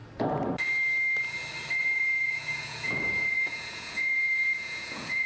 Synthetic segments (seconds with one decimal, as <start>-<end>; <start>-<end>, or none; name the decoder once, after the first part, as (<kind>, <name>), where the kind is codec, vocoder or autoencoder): 1.8-5.3 (vocoder, Vocos)